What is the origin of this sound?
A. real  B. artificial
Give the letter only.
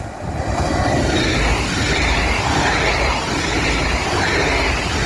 A